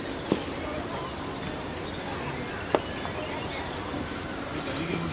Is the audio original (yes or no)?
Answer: no